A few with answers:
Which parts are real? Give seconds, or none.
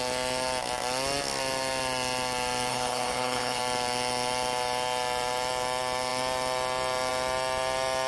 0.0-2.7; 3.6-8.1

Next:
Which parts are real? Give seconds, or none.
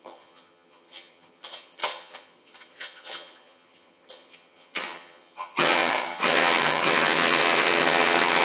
none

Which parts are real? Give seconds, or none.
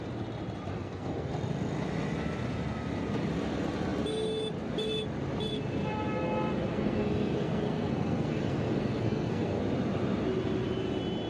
0.0-0.7; 1.3-6.7; 9.6-11.3